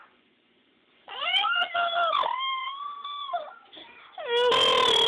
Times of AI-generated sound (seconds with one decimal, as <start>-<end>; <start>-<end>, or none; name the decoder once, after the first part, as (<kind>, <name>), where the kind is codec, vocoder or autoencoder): 0.0-1.7 (vocoder, Vocos); 2.6-3.7